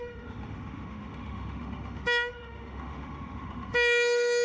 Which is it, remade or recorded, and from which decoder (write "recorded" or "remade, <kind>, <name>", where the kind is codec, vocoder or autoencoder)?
remade, autoencoder, DAC-VAE